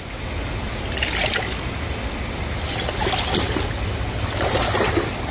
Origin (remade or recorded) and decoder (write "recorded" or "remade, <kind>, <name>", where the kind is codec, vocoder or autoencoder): recorded